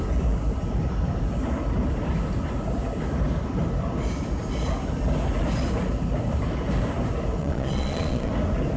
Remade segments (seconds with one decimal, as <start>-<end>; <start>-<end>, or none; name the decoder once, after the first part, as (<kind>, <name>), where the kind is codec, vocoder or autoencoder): 7.4-8.3 (vocoder, Vocos)